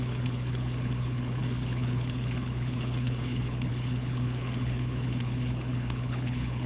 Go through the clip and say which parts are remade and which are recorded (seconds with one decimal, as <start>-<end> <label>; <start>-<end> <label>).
0.0-6.7 remade